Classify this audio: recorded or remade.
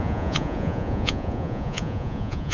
remade